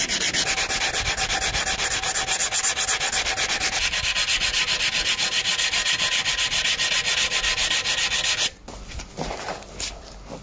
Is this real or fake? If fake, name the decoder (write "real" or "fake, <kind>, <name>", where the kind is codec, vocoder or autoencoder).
real